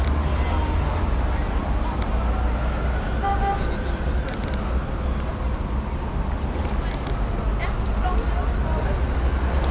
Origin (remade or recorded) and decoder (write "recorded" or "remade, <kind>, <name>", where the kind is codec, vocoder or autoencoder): recorded